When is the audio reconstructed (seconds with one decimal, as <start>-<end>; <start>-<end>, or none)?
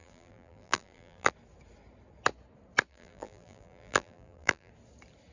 0.0-1.3; 2.9-4.7